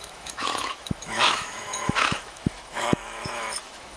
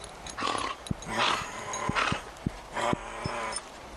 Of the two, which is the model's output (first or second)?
first